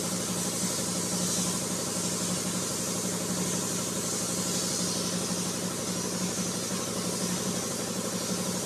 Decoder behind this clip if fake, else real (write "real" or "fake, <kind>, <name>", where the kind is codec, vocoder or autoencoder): real